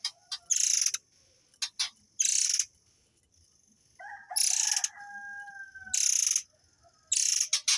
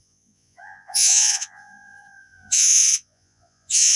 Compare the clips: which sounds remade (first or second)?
second